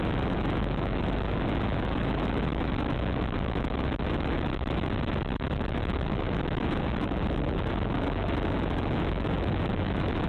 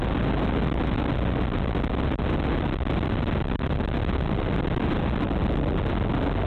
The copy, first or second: first